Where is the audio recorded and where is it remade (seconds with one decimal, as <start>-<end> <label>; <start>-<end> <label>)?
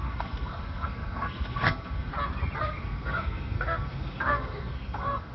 0.0-2.1 remade; 2.1-2.6 recorded; 2.6-5.3 remade